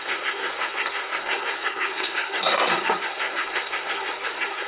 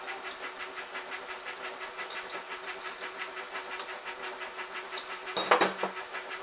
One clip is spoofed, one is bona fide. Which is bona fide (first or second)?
second